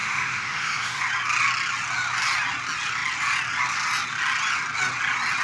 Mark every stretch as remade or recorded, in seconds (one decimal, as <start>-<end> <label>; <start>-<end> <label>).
0.0-1.0 remade; 1.0-5.4 recorded